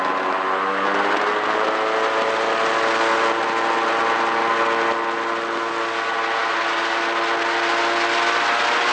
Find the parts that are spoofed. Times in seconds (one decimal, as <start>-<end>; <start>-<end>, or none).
none